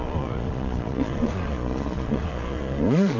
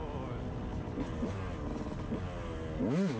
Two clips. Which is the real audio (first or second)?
second